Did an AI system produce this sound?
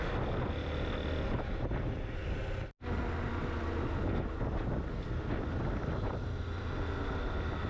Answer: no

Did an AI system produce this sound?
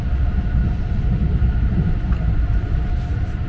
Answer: no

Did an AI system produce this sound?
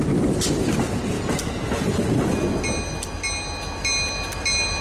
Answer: no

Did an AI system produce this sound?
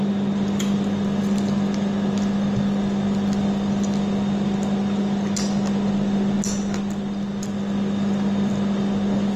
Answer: no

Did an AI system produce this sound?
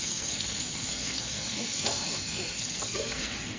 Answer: yes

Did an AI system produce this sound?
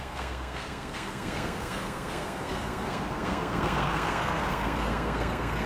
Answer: yes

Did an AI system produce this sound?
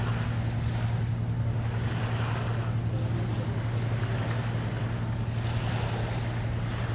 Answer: no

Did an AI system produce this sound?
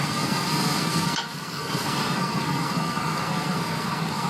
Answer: yes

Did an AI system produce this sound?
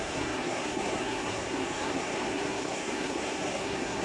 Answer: yes